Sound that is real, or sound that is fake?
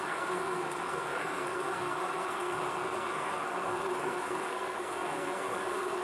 fake